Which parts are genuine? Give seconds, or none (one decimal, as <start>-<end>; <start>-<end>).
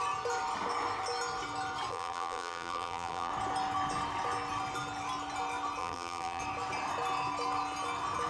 0.0-1.9; 3.3-5.8; 6.4-8.3